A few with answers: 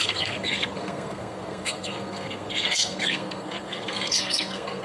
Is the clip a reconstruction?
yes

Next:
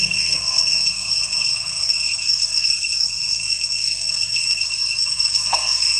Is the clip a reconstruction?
yes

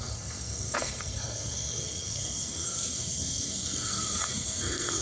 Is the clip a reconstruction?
yes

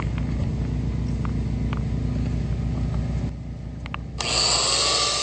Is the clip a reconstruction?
no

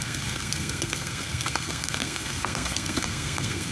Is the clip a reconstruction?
yes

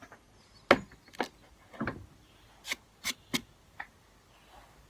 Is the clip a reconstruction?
no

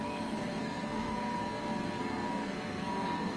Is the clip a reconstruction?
yes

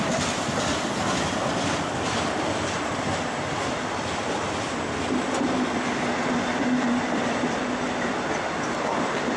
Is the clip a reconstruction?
no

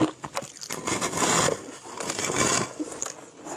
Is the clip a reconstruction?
no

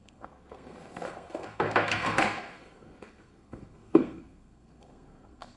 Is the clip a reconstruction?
yes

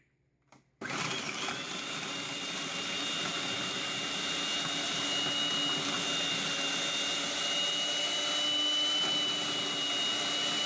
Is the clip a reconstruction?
no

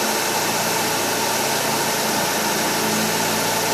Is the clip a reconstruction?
no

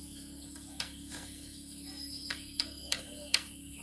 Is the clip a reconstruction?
yes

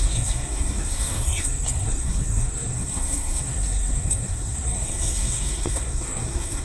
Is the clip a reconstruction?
yes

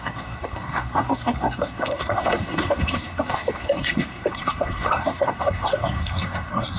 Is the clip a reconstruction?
yes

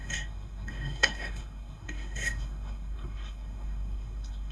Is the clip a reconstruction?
yes